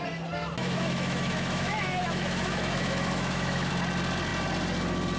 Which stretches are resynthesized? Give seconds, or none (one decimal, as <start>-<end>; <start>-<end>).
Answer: 0.6-3.7